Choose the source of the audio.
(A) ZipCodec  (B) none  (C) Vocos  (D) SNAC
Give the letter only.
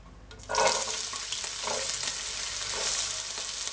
B